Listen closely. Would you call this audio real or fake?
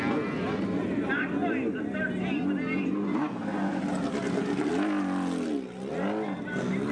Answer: real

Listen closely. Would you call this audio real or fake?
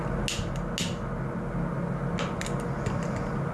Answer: real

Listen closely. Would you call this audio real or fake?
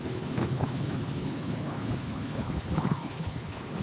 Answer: fake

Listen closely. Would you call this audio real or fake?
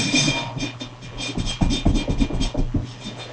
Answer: real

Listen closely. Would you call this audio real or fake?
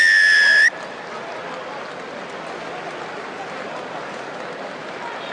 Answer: real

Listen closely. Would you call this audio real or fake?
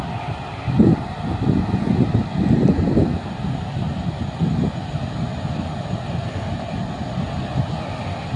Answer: real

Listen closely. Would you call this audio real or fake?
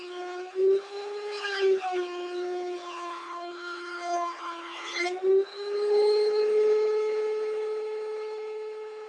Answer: fake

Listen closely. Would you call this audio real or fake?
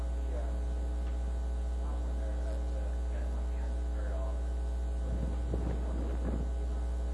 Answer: real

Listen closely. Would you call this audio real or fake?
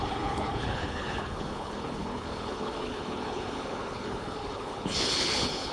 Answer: fake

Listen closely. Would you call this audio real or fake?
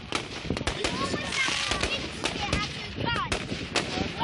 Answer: real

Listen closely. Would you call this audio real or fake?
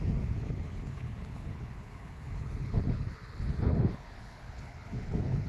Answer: fake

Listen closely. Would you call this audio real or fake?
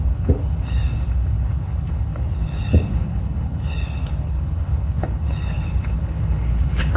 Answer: fake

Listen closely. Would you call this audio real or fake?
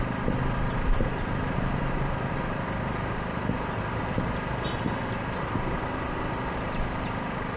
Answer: real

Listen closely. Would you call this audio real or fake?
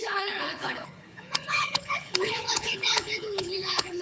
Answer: fake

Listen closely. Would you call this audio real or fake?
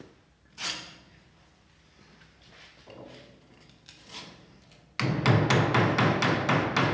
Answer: real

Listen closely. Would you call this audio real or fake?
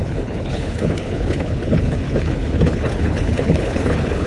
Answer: fake